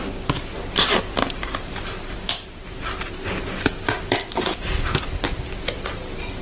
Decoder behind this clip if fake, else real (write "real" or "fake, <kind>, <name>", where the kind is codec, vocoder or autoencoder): real